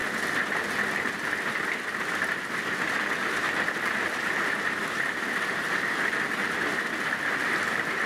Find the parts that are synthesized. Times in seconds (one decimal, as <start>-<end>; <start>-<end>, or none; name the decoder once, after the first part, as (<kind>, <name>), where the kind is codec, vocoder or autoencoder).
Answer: none